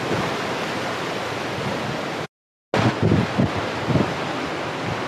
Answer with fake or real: real